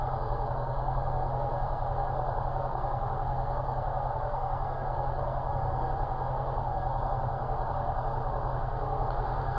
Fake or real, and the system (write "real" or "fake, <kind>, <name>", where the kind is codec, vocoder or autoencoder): fake, codec, SNAC